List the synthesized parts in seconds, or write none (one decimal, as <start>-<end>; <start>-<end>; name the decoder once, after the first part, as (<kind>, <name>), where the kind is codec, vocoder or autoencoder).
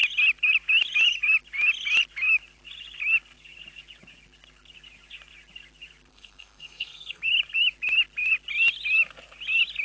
6.1-7.2 (codec, SNAC)